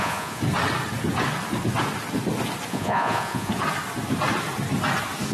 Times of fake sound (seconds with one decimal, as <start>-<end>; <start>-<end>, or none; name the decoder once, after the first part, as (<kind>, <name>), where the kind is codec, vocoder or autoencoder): 0.0-0.4 (vocoder, Vocos); 2.7-3.5